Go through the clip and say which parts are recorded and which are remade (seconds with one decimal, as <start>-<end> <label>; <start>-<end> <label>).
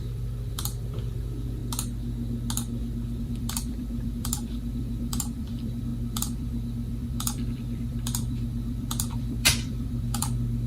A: 0.0-1.6 remade; 1.6-3.2 recorded; 3.2-10.7 remade